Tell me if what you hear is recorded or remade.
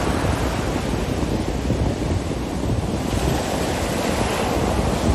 recorded